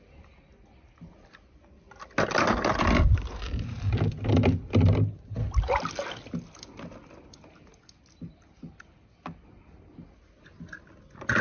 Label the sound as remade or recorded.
recorded